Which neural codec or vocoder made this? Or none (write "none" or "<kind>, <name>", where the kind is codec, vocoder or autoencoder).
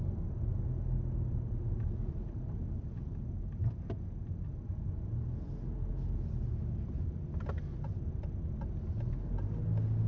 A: none